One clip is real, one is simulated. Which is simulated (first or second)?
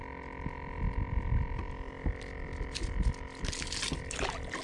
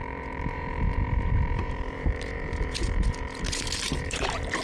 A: second